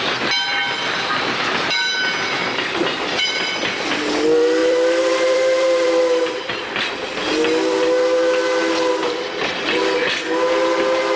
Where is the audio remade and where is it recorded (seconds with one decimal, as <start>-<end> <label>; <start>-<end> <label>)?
0.0-2.4 recorded; 2.4-3.5 remade; 3.5-4.6 recorded; 4.6-6.4 remade; 6.4-11.2 recorded